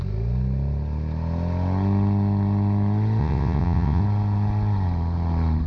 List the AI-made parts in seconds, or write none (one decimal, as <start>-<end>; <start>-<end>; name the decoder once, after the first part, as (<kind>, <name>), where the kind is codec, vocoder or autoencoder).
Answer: 3.2-4.0 (vocoder, WaveNeXt)